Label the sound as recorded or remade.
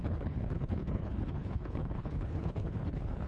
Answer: remade